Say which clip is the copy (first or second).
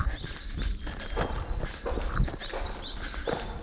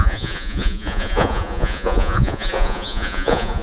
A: second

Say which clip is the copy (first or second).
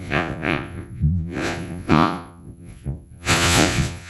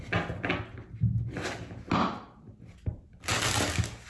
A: first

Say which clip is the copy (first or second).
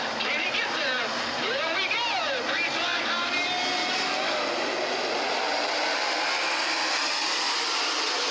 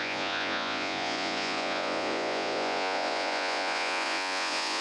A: second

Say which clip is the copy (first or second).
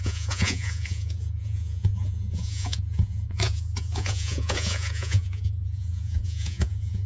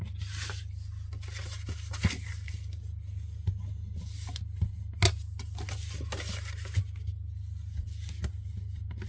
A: first